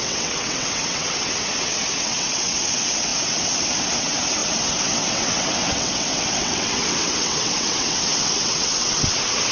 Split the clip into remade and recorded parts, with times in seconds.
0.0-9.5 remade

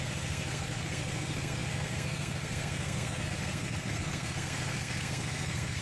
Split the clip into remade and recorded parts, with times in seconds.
0.0-5.8 remade

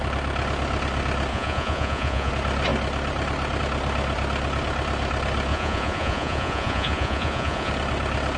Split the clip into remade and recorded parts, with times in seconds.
0.0-1.3 recorded; 1.3-2.3 remade; 2.3-5.5 recorded; 5.5-7.7 remade; 7.7-8.4 recorded